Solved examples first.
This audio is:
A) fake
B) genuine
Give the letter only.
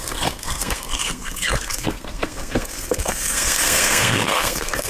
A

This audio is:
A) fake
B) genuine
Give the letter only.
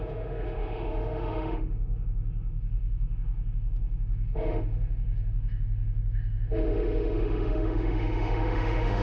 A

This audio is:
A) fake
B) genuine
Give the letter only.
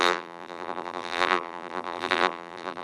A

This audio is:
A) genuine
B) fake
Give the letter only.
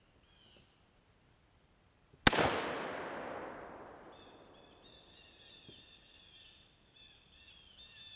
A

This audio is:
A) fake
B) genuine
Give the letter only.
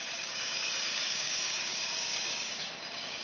A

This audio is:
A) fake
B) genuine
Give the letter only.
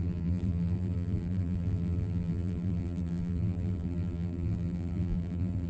A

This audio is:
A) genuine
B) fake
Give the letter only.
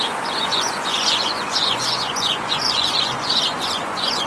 B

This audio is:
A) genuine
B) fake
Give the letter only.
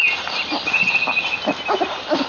A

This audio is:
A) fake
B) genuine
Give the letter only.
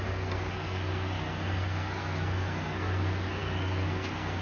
A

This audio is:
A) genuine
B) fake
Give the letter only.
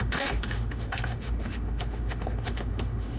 B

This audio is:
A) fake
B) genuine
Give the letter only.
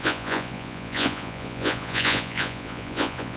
A